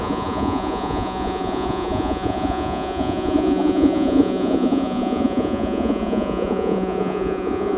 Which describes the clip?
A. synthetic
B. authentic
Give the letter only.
A